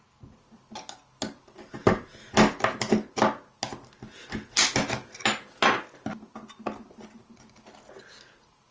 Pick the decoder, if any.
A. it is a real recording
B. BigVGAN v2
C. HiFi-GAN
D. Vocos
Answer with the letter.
A